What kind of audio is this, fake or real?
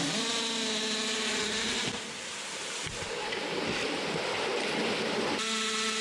real